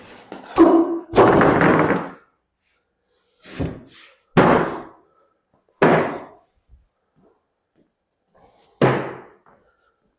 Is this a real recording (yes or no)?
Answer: yes